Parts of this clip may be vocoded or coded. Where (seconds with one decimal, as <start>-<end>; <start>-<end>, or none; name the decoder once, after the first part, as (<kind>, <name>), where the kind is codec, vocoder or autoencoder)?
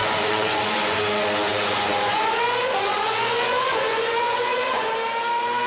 0.0-1.0 (vocoder, Vocos); 1.5-4.9